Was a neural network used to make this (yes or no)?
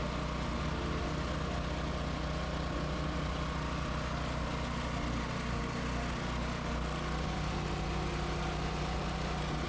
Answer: no